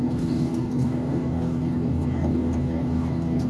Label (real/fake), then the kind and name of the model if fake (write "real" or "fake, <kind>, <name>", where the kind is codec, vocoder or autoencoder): fake, codec, DAC